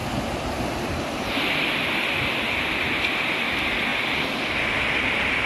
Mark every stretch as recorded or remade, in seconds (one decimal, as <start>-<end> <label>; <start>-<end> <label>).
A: 0.0-3.9 recorded; 3.9-4.7 remade; 4.7-5.5 recorded